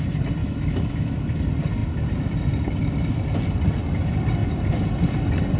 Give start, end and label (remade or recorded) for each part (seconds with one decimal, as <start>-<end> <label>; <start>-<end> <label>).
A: 0.0-0.4 recorded; 0.4-1.4 remade; 1.4-5.6 recorded